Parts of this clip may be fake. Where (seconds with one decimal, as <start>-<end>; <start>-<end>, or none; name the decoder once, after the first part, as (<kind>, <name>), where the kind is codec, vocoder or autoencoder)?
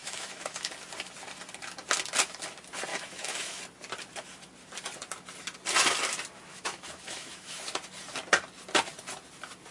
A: 0.0-0.7 (autoencoder, DAC-VAE); 2.9-3.6; 6.5-7.6